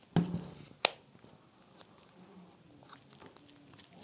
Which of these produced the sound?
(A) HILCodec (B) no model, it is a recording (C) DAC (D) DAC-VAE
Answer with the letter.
B